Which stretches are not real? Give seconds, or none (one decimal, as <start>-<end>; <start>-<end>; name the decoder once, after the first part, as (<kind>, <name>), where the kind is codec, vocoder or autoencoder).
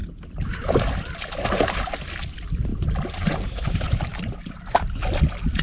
2.7-4.9 (vocoder, BigVGAN v2)